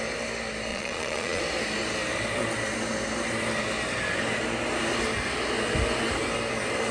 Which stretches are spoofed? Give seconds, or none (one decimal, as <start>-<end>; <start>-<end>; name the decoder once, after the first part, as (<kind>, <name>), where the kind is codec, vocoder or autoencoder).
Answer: 0.7-1.4 (vocoder, Vocos)